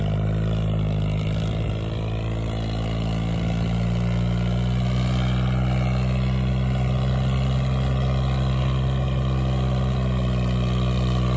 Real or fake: real